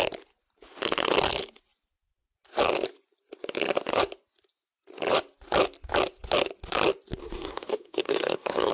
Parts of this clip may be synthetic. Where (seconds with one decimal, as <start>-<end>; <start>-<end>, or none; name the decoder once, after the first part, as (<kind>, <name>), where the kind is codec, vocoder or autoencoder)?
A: 7.2-8.7 (codec, SNAC)